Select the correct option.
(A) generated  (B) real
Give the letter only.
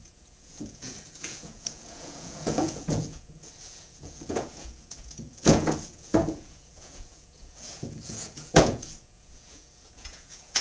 A